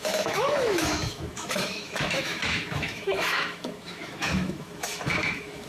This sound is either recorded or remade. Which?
remade